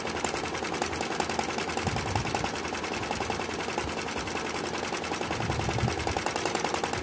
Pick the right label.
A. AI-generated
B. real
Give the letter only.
B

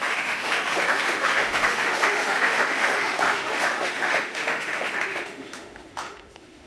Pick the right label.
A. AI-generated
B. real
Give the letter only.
A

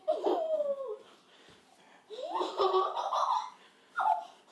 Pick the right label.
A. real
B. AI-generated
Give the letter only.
A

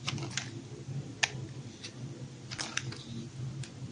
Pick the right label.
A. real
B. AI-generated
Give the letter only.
A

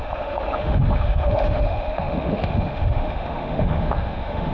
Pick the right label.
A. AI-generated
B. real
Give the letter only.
A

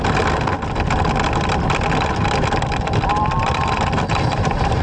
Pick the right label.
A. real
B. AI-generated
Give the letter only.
A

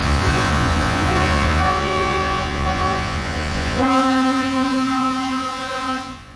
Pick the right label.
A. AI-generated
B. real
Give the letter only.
A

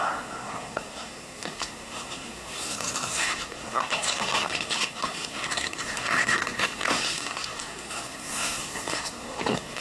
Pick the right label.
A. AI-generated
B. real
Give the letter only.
A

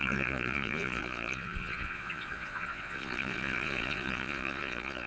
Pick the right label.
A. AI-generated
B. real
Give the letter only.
A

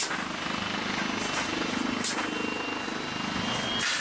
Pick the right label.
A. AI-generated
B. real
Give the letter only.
B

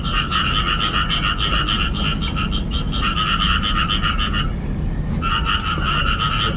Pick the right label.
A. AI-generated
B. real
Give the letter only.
B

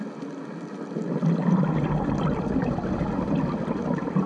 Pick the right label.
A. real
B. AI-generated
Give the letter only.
A